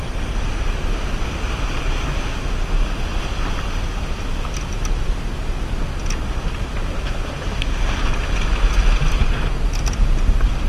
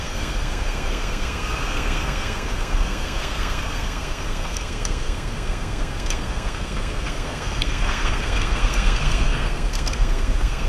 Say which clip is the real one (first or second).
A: first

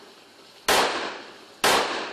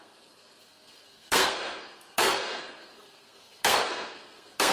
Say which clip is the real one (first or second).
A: first